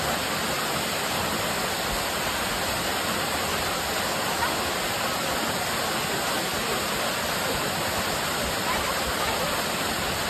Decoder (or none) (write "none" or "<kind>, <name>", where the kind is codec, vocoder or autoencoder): none